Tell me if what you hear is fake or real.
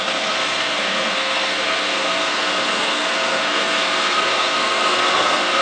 fake